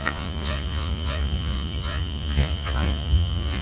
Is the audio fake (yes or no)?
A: yes